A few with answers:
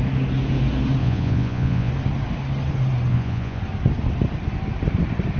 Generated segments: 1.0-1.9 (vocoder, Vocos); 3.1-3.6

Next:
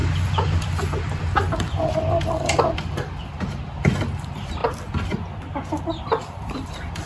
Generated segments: 0.0-4.6 (vocoder, BigVGAN v2); 5.8-7.1

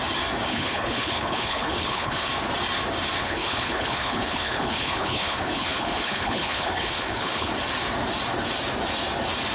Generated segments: 0.5-2.3 (codec, HILCodec); 3.2-7.5

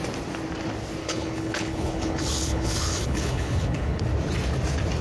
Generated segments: 1.0-4.0 (codec, HILCodec)

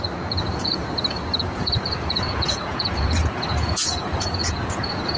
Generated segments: 0.0-0.8 (vocoder, Vocos); 1.4-5.2

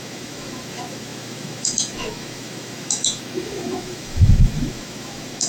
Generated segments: 0.0-5.5 (autoencoder, DAC-VAE)

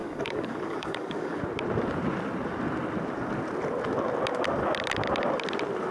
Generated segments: 0.0-1.4 (codec, DAC)

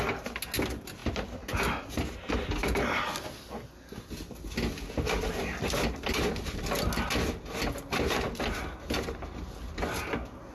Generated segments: none